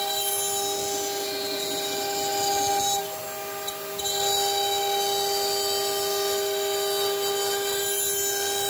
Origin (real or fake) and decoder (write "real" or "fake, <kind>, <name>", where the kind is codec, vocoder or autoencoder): real